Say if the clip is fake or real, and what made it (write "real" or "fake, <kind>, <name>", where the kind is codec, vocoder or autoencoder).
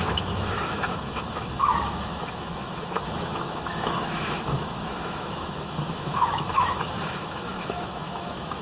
fake, autoencoder, DAC-VAE